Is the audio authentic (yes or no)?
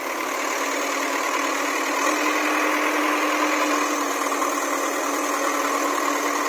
yes